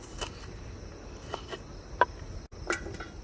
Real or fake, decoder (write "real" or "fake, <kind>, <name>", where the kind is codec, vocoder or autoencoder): real